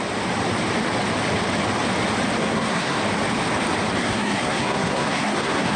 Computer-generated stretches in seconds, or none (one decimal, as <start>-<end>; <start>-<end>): 2.4-3.0; 4.0-5.8